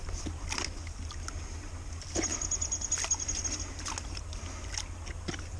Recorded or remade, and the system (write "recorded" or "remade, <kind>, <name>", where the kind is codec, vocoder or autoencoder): recorded